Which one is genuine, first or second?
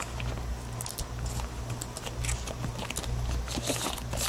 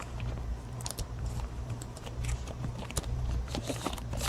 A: first